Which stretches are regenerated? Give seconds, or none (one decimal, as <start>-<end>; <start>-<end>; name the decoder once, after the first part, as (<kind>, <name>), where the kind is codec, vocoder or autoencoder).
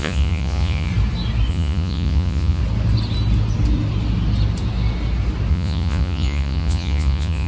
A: 0.0-0.9 (vocoder, Vocos); 1.5-2.6; 5.5-7.5